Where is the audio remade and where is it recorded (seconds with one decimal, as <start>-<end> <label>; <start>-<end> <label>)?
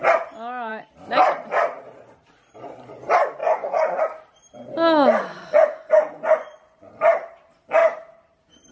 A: 0.0-3.4 recorded; 3.4-4.0 remade; 4.0-5.3 recorded; 5.3-6.9 remade; 6.9-8.7 recorded